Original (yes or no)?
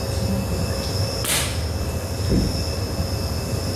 yes